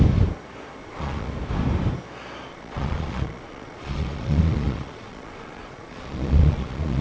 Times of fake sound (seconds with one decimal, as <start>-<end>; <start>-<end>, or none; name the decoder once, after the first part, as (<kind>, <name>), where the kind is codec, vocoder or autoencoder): 0.8-1.3 (vocoder, Vocos); 2.5-7.0